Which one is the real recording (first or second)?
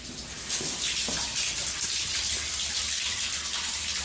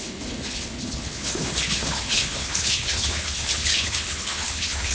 first